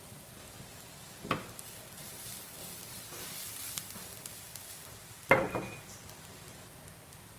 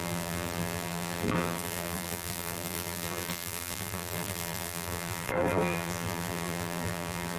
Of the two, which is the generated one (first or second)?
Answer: second